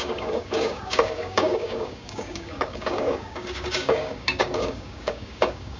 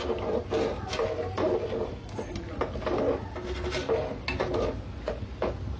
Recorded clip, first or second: second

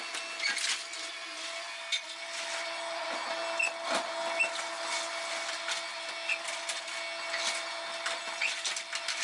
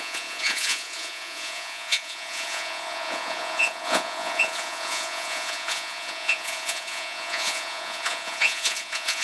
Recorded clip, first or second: first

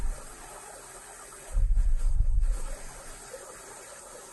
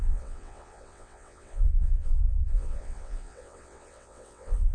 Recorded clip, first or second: first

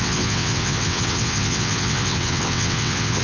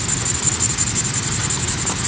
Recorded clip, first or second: second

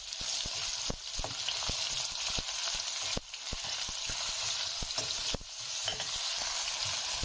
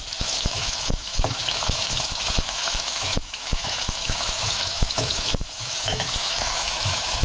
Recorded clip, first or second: first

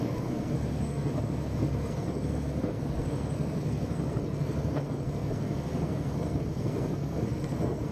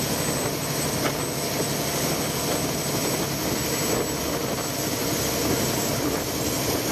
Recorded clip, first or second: second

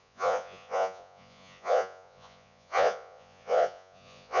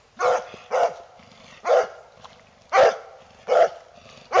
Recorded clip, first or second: second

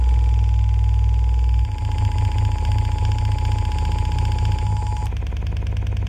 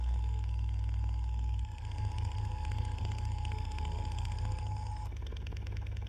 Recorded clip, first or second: first